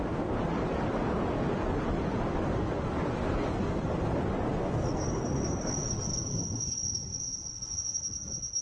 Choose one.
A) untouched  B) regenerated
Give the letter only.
A